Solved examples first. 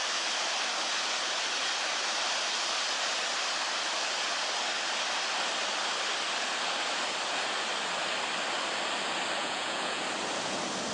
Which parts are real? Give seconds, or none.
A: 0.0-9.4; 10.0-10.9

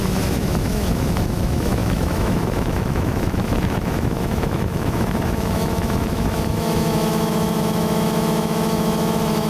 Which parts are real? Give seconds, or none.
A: none

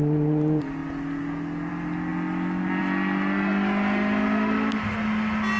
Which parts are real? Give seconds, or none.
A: 0.0-5.6

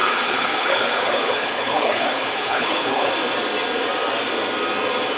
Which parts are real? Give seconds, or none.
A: 3.1-5.2

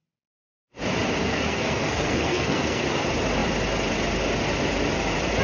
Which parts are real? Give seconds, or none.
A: 0.0-1.2; 2.8-5.4

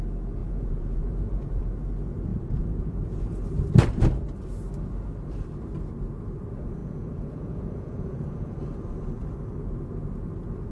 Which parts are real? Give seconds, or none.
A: 0.0-0.4; 1.6-2.3; 3.2-6.8; 8.6-10.7

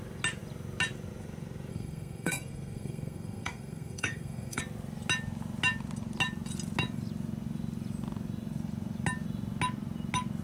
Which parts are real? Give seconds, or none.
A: 0.0-1.7; 4.6-10.4